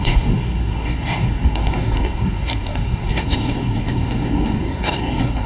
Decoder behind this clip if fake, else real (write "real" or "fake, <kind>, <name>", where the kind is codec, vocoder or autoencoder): fake, codec, SNAC